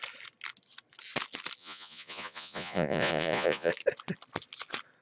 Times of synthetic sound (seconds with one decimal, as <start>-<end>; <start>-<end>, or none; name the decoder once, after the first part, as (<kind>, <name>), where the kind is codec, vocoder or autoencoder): 1.6-3.7 (vocoder, Vocos)

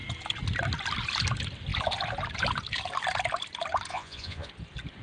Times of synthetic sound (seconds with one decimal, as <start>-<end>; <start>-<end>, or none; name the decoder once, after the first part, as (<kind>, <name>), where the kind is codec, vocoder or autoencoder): 3.9-4.5 (vocoder, Vocos)